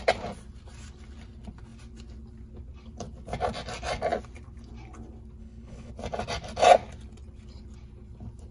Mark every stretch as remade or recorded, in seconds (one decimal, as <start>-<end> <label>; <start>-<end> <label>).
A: 0.0-5.4 recorded; 5.4-5.9 remade; 5.9-8.5 recorded